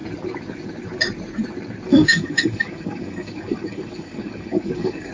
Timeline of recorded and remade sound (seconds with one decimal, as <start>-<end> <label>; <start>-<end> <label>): 0.0-1.9 recorded; 1.9-5.1 remade